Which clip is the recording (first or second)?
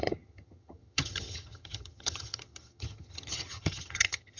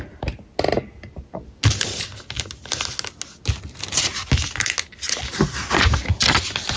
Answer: second